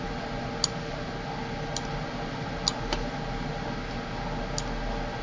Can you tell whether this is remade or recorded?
recorded